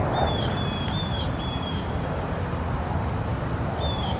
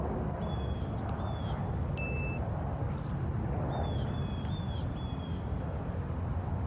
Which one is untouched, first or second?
second